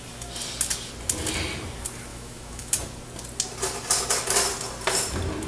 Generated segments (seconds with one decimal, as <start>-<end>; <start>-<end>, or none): 2.1-2.7

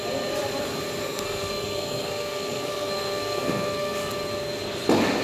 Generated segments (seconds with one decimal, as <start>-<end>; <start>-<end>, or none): 1.0-4.1

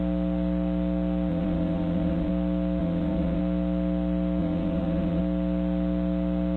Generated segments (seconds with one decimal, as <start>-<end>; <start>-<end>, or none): 1.3-2.3; 2.8-3.4; 4.4-5.2